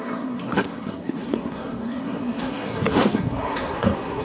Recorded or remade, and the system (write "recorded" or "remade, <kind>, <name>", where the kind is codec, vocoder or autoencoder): remade, codec, SNAC